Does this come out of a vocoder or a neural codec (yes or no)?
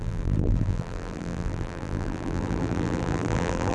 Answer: yes